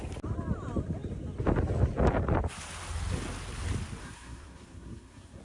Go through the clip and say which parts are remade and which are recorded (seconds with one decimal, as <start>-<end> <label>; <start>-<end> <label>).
0.0-4.0 recorded; 4.0-5.4 remade